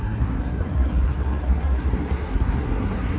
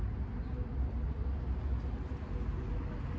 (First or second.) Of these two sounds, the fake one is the first